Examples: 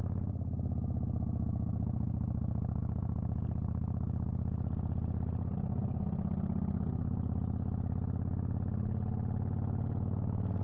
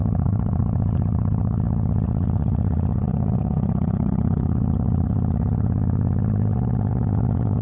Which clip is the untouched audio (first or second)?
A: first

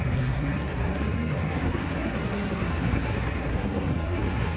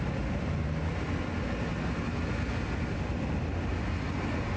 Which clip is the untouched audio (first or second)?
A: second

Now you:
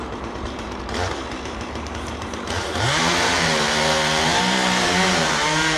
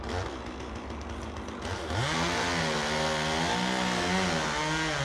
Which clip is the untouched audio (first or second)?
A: second